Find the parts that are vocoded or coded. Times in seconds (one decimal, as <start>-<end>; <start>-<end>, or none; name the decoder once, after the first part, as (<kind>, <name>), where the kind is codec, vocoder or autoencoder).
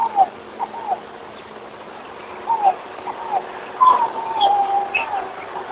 none